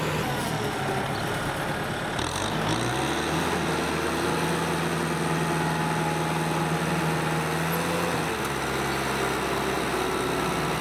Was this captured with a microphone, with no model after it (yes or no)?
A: yes